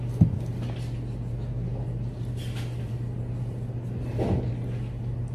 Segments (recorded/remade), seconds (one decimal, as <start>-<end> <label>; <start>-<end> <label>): 0.0-5.3 recorded